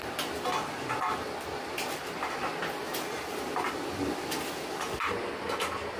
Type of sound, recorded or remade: recorded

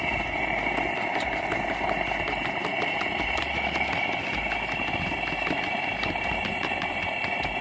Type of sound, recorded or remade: recorded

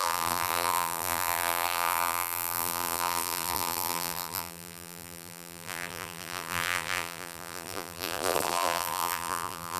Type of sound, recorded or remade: remade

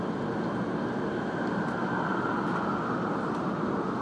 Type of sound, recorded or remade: recorded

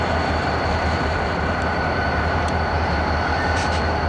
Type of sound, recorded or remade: remade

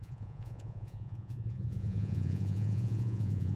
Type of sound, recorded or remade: remade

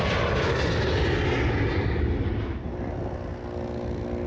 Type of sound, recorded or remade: recorded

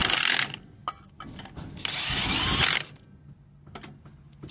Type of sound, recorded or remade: recorded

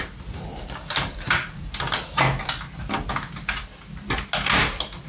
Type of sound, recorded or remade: recorded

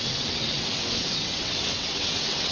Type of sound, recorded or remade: remade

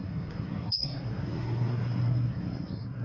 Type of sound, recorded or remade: remade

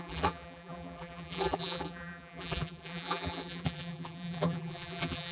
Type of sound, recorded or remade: remade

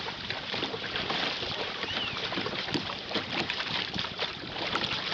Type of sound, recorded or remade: remade